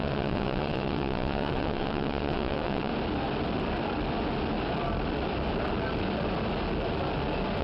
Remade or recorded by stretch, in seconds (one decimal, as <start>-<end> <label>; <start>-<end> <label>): 0.0-2.9 remade; 2.9-7.6 recorded